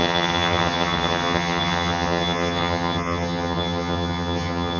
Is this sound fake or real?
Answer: fake